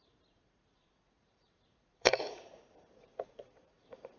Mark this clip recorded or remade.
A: remade